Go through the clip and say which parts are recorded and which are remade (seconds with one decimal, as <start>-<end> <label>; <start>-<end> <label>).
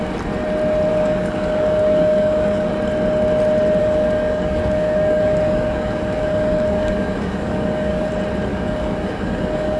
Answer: 0.0-0.9 recorded; 0.9-2.7 remade; 2.7-3.8 recorded; 3.8-8.1 remade; 8.1-8.5 recorded; 8.5-9.8 remade